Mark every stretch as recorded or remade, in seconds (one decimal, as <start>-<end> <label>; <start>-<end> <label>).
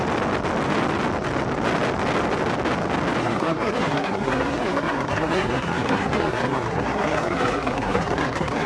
0.0-3.2 recorded; 3.2-8.7 remade